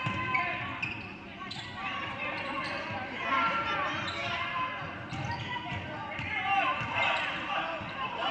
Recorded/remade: recorded